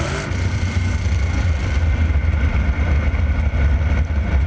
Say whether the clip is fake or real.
fake